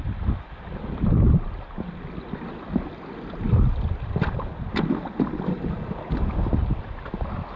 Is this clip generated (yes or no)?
no